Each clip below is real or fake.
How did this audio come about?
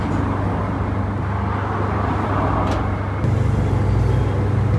real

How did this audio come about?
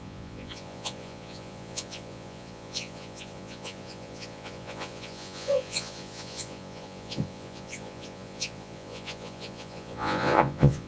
fake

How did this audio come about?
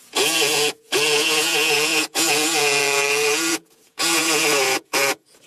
fake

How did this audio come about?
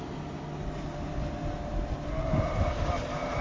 real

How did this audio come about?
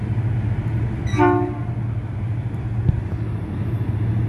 real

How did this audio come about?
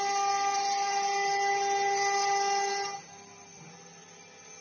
real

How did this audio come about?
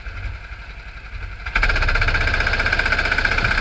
real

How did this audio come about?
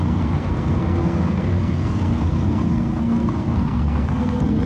fake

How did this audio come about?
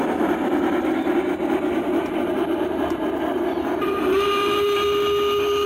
real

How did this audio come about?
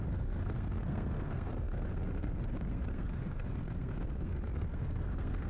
fake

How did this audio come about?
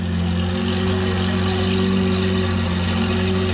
real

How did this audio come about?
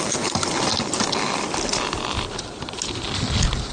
real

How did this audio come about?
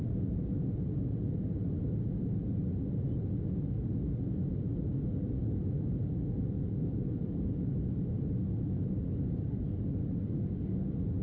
real